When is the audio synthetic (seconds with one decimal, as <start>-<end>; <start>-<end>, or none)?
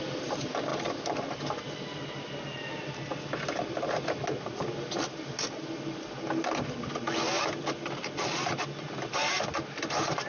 none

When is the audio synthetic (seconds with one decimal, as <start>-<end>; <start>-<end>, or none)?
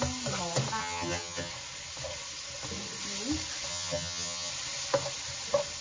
0.8-1.5; 3.7-4.5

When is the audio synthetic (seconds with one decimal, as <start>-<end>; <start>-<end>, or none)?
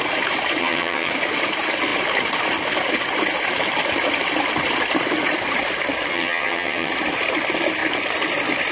0.6-1.1; 6.1-6.9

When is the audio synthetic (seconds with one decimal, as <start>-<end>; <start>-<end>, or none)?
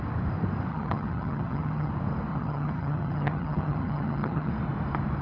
0.7-1.9; 2.3-4.5